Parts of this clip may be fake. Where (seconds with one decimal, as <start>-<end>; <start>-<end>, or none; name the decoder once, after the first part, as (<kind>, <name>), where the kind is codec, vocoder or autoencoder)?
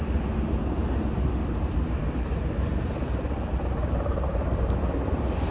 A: 1.4-4.7 (vocoder, BigVGAN v2)